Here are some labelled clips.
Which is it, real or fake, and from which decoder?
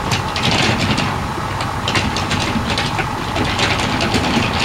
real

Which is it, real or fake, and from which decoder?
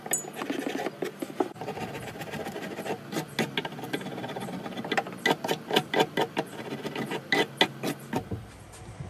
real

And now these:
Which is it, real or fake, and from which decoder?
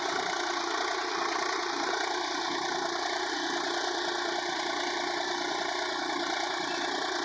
real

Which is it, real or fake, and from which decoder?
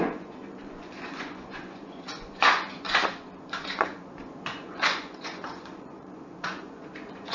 fake, vocoder, Vocos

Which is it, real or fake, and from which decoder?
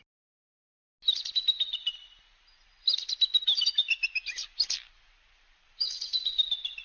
real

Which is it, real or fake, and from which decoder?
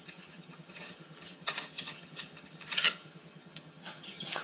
fake, vocoder, HiFi-GAN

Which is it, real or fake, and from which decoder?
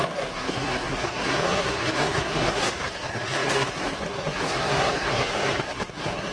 fake, codec, SNAC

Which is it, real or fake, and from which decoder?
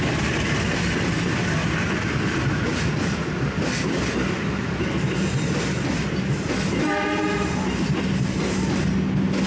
real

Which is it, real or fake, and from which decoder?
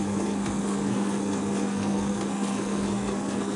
fake, codec, SNAC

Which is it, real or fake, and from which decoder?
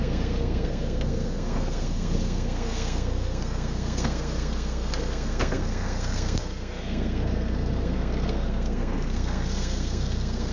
fake, codec, SNAC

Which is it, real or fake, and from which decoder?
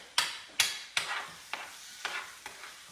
real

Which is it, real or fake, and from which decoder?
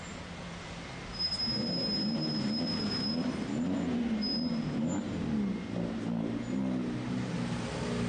real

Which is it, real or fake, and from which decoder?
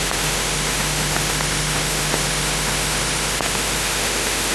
fake, autoencoder, DAC-VAE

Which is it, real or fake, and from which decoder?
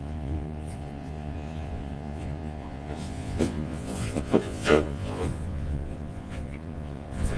fake, vocoder, Vocos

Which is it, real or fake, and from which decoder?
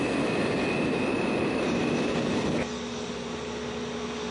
real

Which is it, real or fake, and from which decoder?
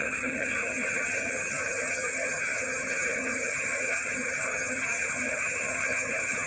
fake, vocoder, HiFi-GAN